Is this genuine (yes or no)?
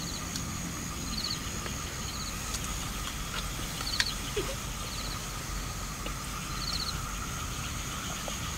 yes